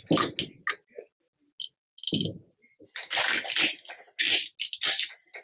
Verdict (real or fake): real